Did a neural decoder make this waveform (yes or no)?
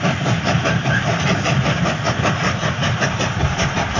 no